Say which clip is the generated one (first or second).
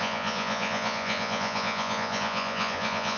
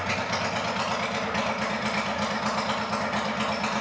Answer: first